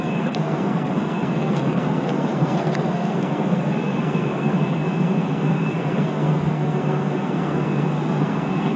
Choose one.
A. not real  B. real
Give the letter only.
A